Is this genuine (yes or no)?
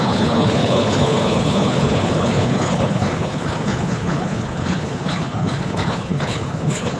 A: no